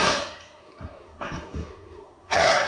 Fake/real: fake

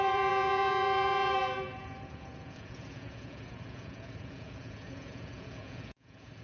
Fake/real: fake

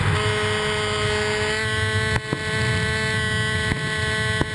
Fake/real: real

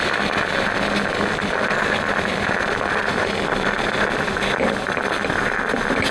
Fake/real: real